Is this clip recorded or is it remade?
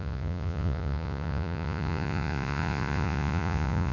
remade